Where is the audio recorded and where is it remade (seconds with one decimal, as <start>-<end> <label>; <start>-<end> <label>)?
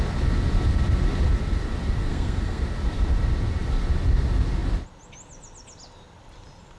0.0-2.1 recorded; 2.1-2.6 remade; 2.6-6.8 recorded